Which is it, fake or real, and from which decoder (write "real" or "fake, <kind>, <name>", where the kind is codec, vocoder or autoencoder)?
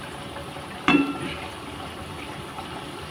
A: fake, vocoder, BigVGAN v2